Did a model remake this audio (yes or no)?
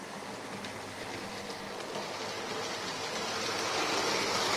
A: no